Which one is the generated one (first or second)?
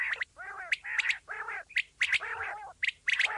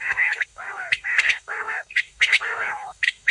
second